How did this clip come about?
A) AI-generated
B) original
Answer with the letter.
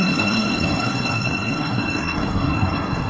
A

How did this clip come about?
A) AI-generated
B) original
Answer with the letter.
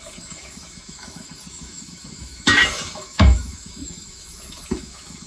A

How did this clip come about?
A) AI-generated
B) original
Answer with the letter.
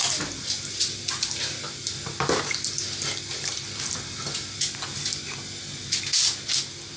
B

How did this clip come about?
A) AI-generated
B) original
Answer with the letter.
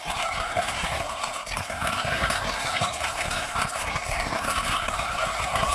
A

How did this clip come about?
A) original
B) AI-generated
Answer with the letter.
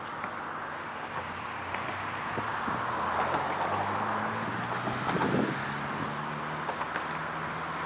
A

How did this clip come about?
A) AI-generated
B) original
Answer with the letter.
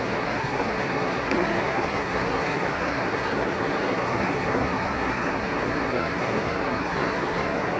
A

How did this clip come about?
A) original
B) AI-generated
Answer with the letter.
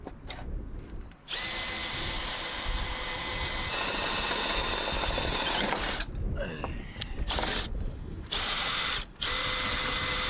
A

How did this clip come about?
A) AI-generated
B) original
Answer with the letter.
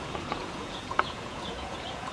A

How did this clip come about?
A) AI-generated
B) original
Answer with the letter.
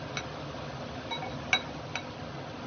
B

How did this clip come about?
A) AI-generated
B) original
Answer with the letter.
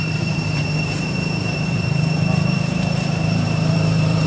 A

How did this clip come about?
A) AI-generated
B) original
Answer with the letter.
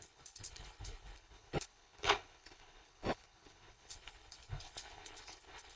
A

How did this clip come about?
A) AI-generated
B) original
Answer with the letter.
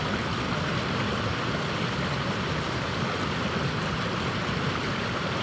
B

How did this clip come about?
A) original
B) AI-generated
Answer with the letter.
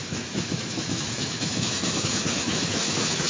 B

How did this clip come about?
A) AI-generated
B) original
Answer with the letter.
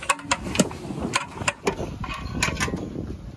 B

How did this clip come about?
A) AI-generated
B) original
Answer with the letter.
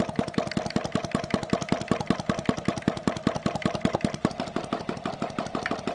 B